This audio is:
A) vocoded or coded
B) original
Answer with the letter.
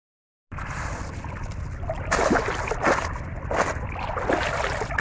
B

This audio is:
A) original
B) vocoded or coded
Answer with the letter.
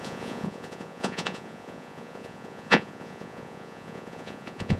B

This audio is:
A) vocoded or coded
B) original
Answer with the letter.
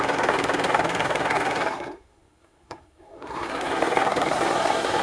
A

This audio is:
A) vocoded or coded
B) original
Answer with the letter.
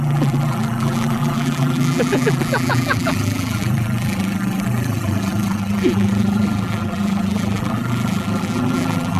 A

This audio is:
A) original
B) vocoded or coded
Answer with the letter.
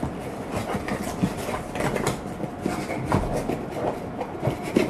A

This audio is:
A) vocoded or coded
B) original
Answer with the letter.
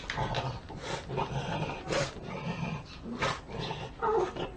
B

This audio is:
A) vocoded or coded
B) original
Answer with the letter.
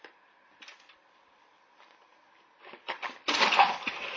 B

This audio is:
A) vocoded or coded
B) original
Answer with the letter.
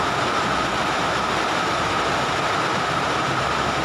A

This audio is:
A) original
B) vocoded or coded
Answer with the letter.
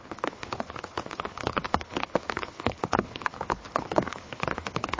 B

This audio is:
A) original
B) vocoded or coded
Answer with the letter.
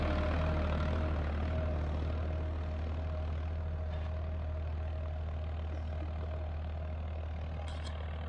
A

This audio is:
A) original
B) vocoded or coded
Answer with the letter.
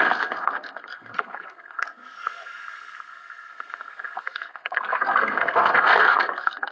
B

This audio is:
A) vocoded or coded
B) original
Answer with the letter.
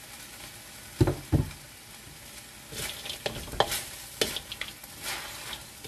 B